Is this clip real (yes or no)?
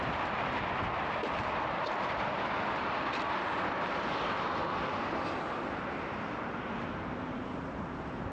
no